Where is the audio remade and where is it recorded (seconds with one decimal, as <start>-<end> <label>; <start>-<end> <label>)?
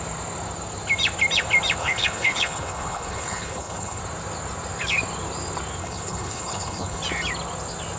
0.0-1.8 recorded; 1.8-4.0 remade; 4.0-5.8 recorded; 5.8-7.0 remade; 7.0-8.0 recorded